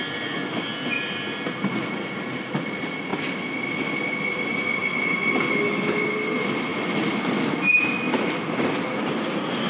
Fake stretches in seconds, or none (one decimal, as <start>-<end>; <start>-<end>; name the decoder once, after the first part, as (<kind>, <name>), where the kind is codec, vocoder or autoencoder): none